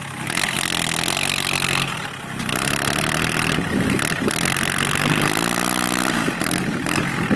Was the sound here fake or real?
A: real